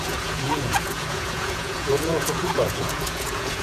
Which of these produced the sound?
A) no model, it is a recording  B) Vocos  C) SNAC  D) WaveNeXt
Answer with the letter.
B